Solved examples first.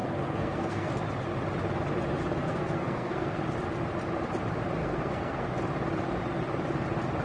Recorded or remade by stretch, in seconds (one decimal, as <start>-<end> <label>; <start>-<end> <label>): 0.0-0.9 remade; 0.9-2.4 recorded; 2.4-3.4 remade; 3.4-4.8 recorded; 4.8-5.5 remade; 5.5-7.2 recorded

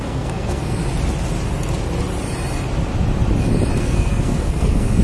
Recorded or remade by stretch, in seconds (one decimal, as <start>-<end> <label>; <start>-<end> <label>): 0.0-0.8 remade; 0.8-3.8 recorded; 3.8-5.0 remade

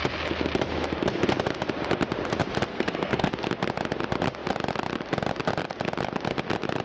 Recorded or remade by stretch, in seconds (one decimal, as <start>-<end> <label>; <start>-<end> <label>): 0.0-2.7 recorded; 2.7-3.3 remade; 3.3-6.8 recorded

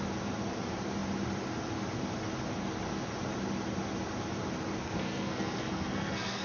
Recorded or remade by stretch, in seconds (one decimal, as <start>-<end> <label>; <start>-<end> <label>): 0.0-4.8 recorded; 4.8-6.4 remade